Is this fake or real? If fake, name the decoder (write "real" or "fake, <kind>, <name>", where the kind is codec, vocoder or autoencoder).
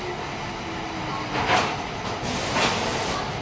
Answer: real